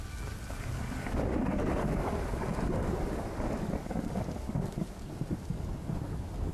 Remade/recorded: remade